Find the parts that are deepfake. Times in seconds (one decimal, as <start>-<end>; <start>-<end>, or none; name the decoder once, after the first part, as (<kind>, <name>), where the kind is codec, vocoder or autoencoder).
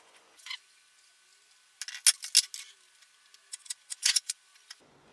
0.0-1.3 (vocoder, Vocos); 3.5-5.1